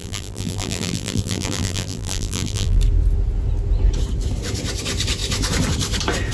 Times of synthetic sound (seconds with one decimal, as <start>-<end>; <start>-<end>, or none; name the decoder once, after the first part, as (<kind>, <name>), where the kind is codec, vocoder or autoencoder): 0.0-2.8 (vocoder, BigVGAN v2)